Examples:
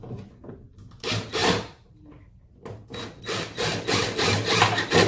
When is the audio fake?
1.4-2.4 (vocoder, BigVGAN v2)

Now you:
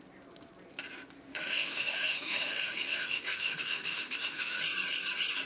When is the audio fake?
1.3-4.6 (autoencoder, DAC-VAE)

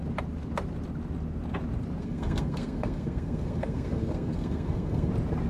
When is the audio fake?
2.0-5.1 (codec, SNAC)

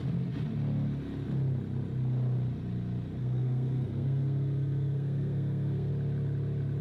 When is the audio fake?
3.2-5.9 (codec, SNAC)

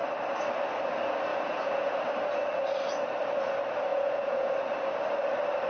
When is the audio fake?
1.3-2.0 (vocoder, Vocos); 3.9-4.5